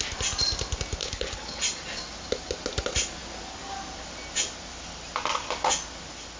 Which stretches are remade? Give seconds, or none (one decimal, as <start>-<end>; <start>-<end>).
1.0-1.6